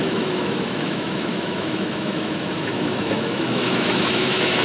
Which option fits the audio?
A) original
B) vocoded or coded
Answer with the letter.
B